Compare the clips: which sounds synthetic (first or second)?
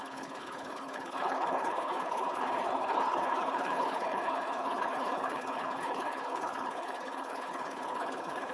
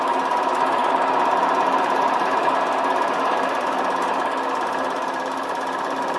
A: first